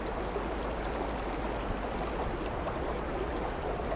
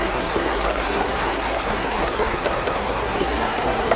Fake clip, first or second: second